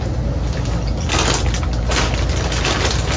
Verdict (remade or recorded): recorded